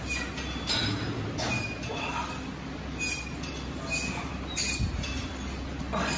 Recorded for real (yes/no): yes